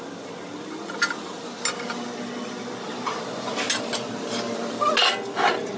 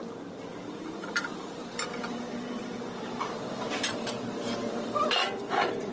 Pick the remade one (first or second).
second